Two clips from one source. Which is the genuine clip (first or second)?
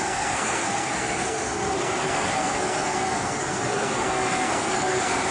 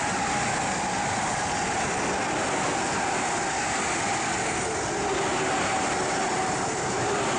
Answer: second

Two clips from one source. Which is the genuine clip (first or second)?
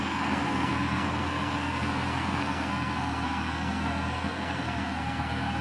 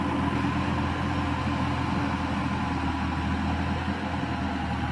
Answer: second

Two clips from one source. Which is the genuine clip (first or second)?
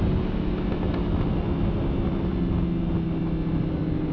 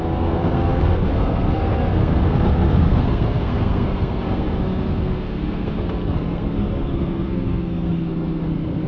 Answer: first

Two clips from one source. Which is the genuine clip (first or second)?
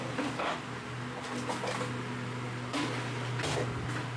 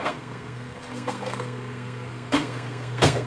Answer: first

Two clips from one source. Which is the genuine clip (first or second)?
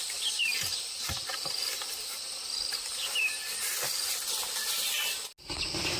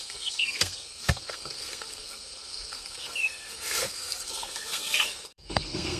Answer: first